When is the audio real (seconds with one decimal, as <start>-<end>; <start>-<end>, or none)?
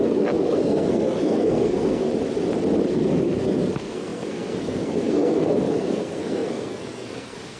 2.1-2.9